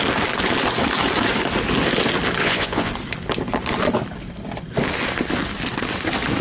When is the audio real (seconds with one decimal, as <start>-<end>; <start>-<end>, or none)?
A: 0.0-2.4; 2.9-6.4